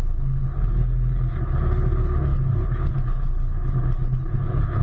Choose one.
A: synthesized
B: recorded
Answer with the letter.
A